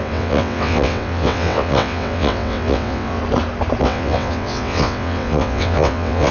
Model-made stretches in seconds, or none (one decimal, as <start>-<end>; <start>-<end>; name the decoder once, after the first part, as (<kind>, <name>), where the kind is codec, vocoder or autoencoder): 0.0-3.2 (vocoder, WaveNeXt); 3.8-6.3